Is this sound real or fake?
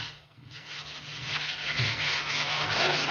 fake